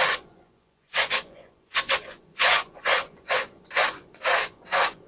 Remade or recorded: remade